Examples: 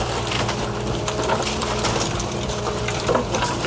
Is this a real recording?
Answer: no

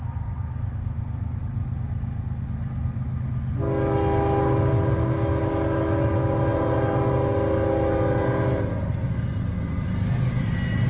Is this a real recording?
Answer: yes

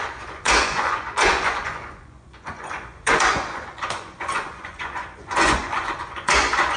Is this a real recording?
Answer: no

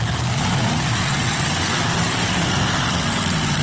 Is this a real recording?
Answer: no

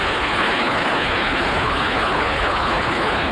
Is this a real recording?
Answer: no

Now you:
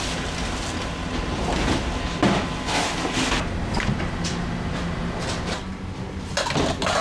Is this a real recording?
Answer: yes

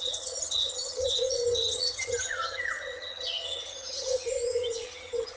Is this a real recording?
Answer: no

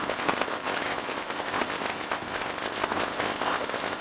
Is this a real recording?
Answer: no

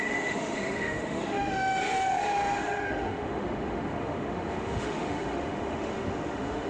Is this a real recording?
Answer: no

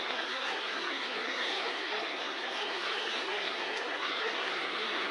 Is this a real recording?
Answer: no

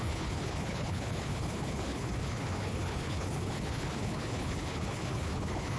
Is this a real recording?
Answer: no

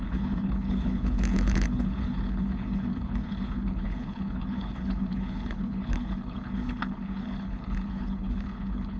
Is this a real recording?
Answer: no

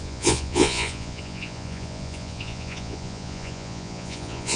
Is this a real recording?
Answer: no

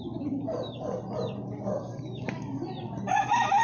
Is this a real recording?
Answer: no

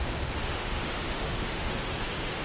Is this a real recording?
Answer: no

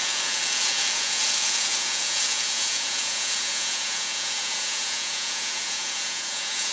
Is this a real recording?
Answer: no